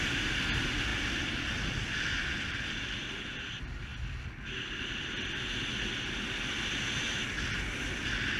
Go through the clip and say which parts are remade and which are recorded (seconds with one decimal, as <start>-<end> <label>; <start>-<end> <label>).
0.0-8.4 recorded

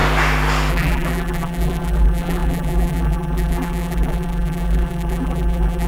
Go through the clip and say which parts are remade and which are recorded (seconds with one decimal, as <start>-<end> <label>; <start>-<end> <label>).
0.0-0.7 recorded; 0.7-5.9 remade

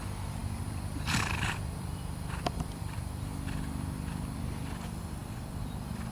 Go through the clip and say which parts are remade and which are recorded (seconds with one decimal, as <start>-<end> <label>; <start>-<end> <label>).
0.0-0.4 recorded; 0.4-4.1 remade; 4.1-5.2 recorded; 5.2-6.1 remade